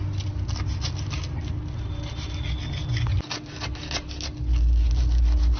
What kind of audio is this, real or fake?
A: real